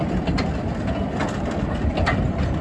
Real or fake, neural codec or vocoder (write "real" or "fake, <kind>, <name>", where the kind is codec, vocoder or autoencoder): real